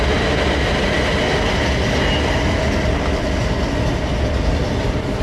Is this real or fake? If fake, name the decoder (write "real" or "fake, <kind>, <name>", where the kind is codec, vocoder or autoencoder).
real